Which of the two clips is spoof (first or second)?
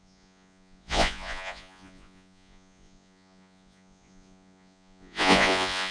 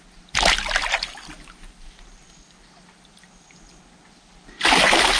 first